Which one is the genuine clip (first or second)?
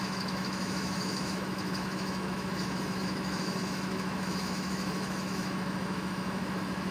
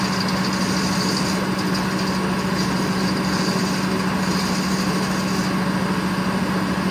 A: second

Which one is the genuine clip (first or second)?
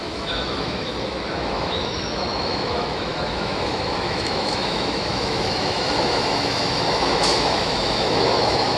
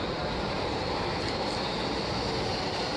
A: second